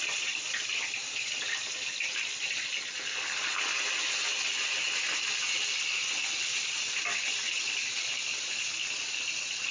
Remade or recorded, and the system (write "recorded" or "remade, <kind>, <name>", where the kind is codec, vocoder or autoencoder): recorded